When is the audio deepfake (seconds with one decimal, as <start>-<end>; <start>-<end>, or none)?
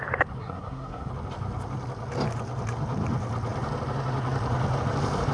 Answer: 0.4-1.1